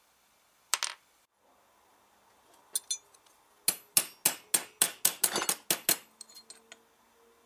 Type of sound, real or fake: real